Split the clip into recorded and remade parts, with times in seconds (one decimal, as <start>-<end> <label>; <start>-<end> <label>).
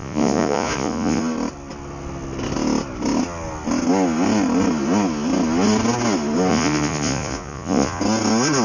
0.0-1.2 remade; 1.2-6.5 recorded; 6.5-8.0 remade; 8.0-8.6 recorded